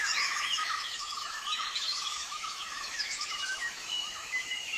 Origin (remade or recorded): remade